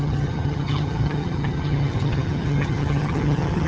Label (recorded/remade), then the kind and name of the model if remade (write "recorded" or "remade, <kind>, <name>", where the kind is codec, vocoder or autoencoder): remade, vocoder, HiFi-GAN